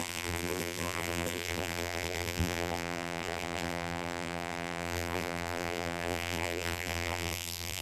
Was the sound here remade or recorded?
remade